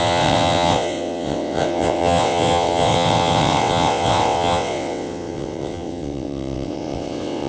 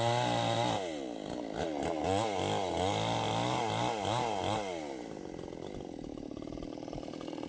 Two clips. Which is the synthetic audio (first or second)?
first